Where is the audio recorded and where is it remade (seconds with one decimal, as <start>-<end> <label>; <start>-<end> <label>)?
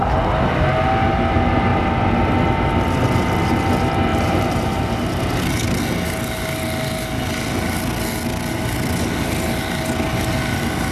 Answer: 0.0-4.1 recorded; 4.1-4.8 remade; 4.8-10.9 recorded